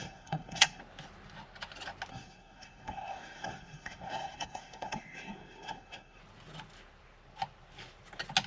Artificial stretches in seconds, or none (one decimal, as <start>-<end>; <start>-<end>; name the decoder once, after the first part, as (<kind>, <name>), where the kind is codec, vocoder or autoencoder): 0.0-0.8 (codec, SNAC); 2.1-6.2